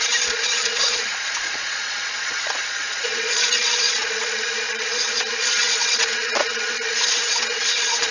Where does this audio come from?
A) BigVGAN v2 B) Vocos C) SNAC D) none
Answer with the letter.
B